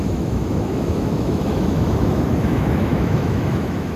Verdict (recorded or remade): remade